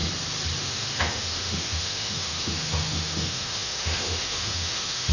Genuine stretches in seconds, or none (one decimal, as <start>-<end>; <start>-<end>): 0.0-0.6